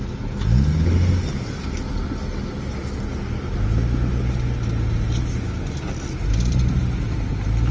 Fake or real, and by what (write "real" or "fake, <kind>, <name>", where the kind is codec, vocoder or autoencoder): real